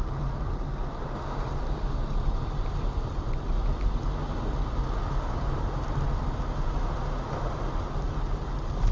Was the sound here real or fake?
real